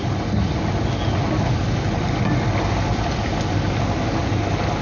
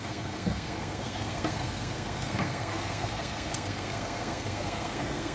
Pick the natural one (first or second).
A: first